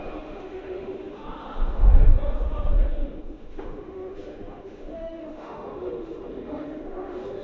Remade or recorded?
remade